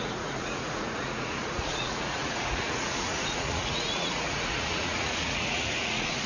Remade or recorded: remade